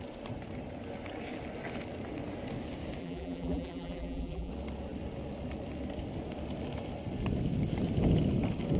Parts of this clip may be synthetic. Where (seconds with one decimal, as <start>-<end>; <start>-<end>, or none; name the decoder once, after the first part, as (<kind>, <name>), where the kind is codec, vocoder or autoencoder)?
3.0-4.5 (vocoder, BigVGAN v2)